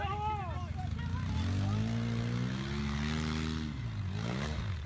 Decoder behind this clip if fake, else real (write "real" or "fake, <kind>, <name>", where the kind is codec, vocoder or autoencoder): real